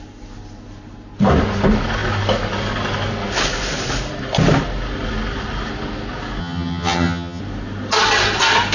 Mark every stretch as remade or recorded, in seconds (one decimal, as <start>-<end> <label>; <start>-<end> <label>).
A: 0.0-6.4 recorded; 6.4-7.4 remade; 7.4-8.7 recorded